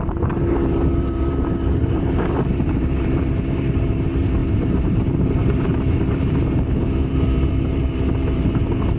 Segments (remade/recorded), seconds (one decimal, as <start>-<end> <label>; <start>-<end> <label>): 0.0-9.0 remade